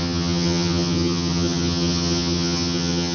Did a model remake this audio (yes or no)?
yes